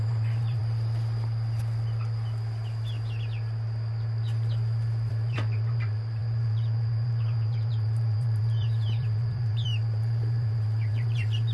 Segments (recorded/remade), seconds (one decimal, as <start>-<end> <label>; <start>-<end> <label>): 0.0-0.6 remade; 0.6-5.1 recorded; 5.1-11.5 remade